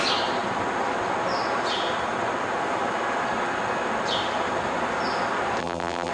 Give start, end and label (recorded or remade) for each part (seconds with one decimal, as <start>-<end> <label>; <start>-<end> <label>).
0.0-5.6 recorded; 5.6-6.1 remade